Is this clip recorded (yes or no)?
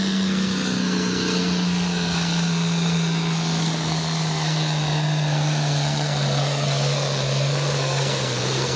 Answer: no